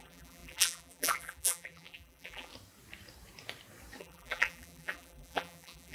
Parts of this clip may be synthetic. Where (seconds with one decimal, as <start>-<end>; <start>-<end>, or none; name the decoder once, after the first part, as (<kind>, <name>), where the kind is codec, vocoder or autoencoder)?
0.0-2.5 (vocoder, BigVGAN v2); 4.0-5.9